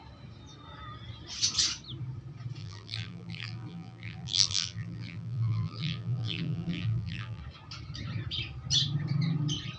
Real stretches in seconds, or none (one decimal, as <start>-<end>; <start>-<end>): 0.0-2.6; 7.4-9.8

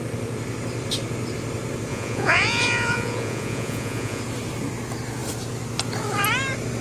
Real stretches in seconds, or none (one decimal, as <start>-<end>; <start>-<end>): 0.0-1.9; 4.2-6.8

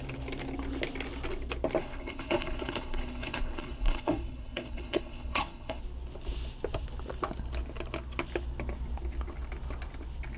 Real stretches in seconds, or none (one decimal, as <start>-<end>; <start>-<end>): 0.0-1.8; 5.8-10.4

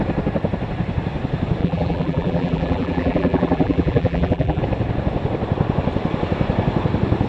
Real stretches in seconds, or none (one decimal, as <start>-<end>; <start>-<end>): 0.0-1.6; 4.6-7.3

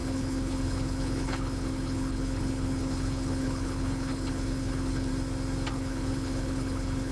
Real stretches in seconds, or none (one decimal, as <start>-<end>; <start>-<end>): 5.1-5.7

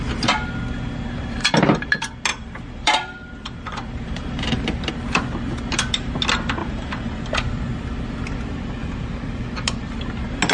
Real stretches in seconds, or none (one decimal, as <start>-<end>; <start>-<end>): 0.0-2.3; 4.9-6.6; 7.2-8.8; 9.4-10.5

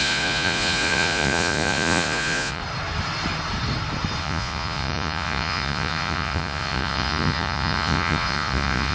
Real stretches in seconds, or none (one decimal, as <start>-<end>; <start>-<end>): 2.6-4.2

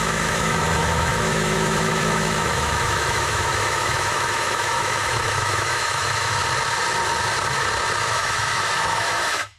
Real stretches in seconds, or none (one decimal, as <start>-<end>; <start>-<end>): 6.4-8.1